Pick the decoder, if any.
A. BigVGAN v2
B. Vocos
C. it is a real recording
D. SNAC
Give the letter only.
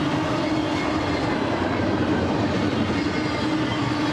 C